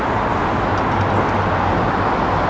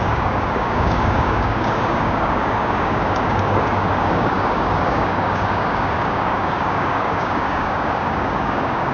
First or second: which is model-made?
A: second